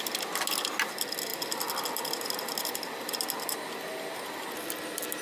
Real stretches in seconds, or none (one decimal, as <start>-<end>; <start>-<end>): 0.0-5.2